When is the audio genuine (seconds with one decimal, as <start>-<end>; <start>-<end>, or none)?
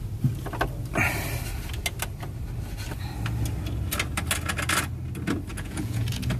0.0-5.5